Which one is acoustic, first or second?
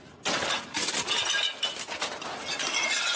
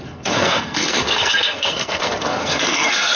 first